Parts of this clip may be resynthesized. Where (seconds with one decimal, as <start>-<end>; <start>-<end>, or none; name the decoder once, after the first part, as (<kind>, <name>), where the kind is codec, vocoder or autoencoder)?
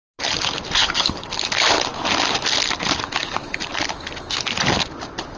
0.8-1.3 (codec, DAC)